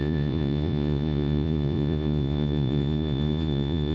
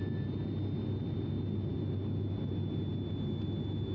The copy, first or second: first